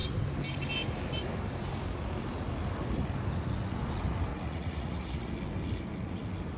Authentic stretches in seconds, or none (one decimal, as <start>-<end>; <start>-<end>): 0.0-4.3; 5.3-6.6